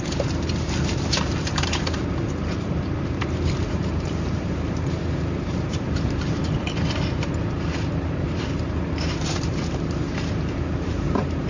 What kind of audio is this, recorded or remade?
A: remade